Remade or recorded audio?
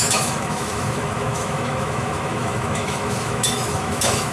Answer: remade